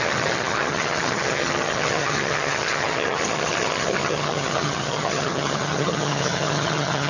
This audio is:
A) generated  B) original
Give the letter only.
A